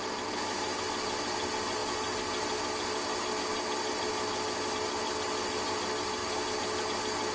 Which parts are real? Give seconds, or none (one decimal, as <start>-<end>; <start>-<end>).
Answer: 0.0-7.3

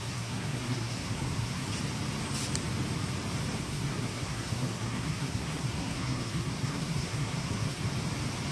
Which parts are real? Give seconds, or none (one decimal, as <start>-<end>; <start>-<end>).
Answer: 1.7-3.5; 7.8-8.5